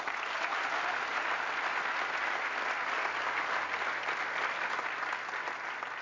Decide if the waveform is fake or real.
real